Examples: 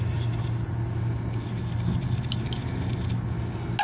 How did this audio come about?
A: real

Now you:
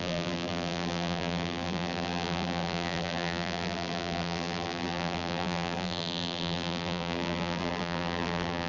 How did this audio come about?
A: fake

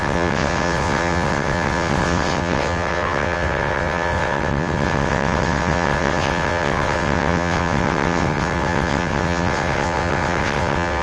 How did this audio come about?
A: fake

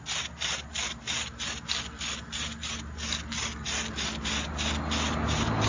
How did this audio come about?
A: real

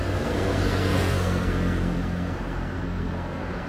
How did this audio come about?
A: fake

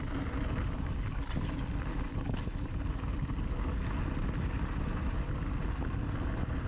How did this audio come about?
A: real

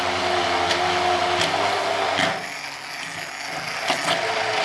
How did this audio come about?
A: real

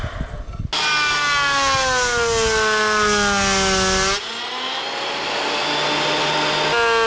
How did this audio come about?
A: real